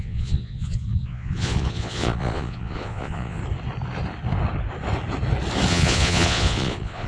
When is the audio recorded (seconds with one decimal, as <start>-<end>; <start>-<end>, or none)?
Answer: 3.4-5.7